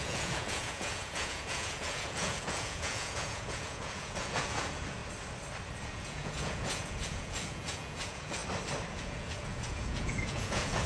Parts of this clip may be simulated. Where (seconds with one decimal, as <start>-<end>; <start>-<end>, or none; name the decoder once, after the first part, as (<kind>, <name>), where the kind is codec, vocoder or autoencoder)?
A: 0.0-5.0 (vocoder, Vocos); 5.9-8.4; 8.9-10.9